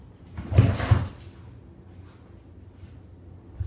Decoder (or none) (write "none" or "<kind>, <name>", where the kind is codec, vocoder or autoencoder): none